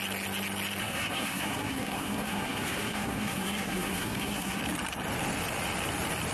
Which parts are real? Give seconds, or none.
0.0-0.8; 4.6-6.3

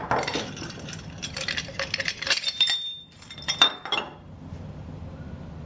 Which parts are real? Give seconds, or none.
0.0-2.0